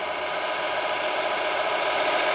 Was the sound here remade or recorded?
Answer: remade